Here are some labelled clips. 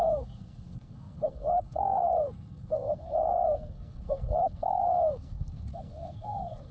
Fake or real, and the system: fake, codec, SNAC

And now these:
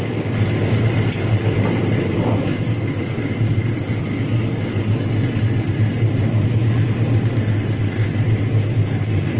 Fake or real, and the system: real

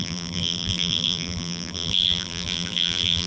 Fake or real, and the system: fake, vocoder, BigVGAN v2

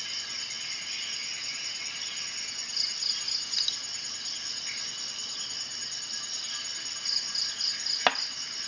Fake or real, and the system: real